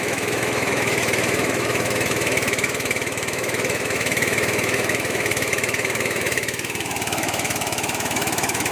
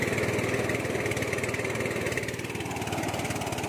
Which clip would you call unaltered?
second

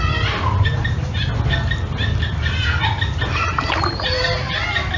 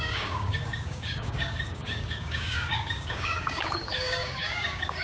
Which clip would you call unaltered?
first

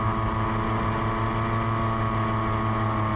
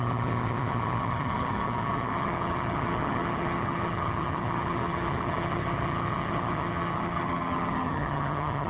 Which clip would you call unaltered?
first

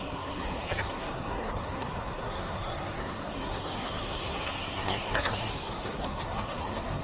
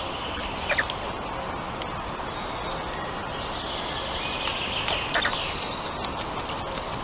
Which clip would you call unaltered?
second